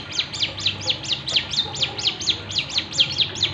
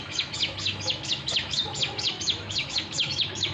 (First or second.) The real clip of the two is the first